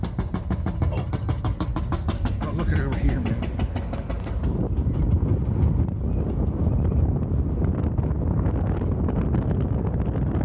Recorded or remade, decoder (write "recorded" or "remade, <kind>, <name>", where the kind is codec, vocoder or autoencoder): recorded